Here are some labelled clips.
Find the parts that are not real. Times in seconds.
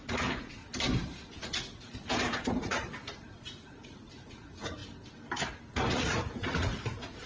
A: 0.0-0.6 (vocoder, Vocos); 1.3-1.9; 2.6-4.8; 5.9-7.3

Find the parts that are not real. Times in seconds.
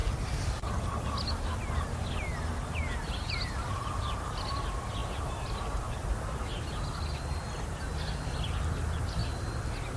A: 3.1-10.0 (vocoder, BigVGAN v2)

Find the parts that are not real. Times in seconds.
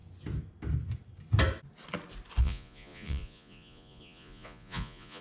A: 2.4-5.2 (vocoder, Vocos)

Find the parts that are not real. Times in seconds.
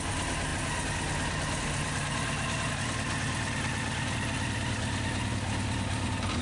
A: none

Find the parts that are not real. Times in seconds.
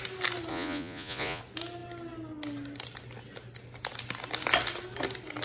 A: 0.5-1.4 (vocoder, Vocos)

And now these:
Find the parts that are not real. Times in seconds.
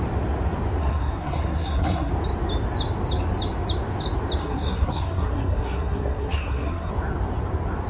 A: 0.8-2.1 (codec, SNAC); 4.4-6.9